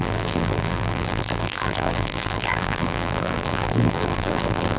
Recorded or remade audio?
remade